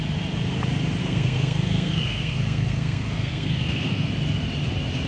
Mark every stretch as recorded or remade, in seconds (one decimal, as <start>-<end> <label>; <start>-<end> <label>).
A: 0.0-1.0 recorded; 1.0-4.1 remade; 4.1-5.1 recorded